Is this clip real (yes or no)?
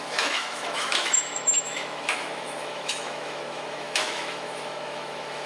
no